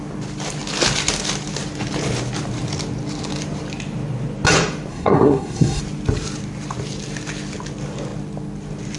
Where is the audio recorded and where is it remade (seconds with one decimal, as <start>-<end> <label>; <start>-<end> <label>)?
0.0-4.9 recorded; 4.9-5.8 remade; 5.8-9.0 recorded